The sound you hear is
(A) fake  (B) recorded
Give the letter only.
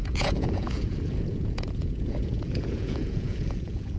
A